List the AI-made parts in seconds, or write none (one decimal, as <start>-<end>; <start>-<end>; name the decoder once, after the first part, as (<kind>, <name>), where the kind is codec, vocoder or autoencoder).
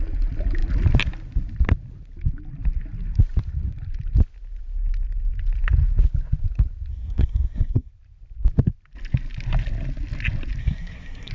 6.9-7.9 (codec, SNAC); 10.6-11.3